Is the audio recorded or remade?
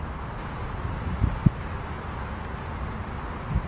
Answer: recorded